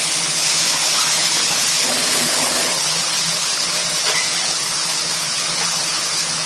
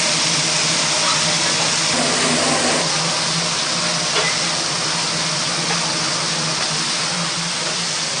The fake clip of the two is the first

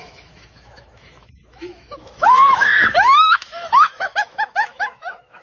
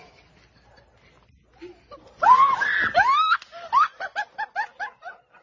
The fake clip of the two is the first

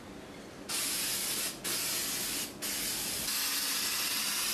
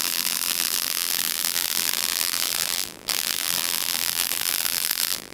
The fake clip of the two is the second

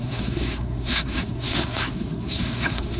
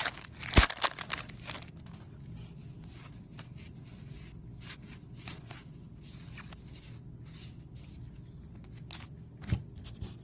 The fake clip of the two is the first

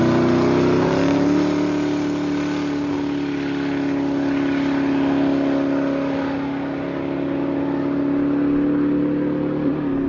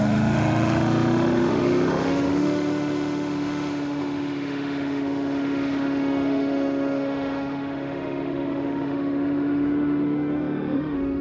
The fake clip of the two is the second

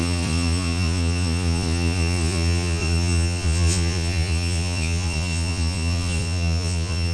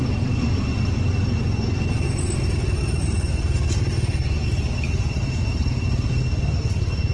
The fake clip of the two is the first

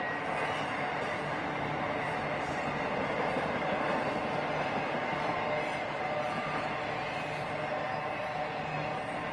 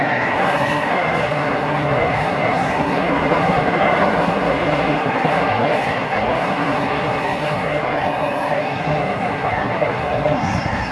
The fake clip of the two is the second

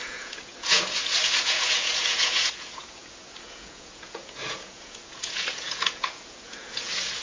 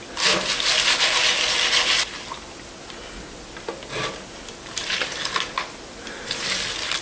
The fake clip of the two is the first